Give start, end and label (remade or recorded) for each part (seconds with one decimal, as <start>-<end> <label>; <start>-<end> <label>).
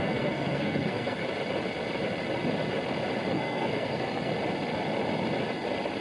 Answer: 0.0-1.2 remade; 1.2-3.3 recorded; 3.3-4.3 remade; 4.3-6.0 recorded